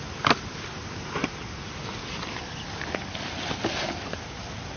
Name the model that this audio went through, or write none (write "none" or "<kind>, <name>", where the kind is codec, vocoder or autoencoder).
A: none